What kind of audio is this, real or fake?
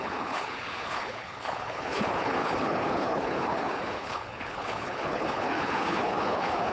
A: fake